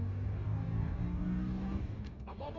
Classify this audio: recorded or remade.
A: remade